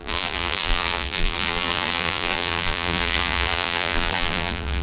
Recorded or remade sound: remade